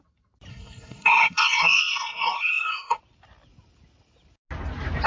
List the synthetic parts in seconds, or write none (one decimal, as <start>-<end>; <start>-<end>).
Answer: 0.5-3.0